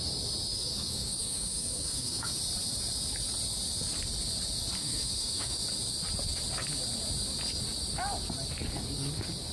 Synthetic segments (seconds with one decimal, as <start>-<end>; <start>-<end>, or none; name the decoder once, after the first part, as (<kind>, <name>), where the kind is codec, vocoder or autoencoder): 0.5-2.4 (autoencoder, DAC-VAE); 4.8-5.6